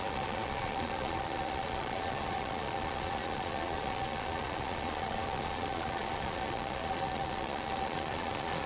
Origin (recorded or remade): remade